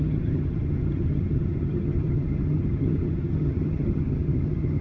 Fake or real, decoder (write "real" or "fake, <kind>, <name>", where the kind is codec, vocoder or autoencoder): fake, vocoder, HiFi-GAN